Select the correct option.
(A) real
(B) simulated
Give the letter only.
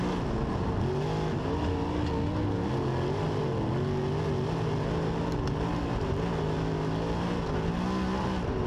A